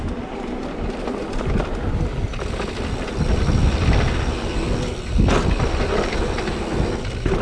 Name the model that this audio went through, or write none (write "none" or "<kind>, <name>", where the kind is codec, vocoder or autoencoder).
none